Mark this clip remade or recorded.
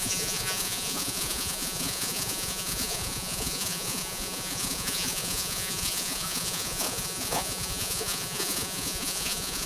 remade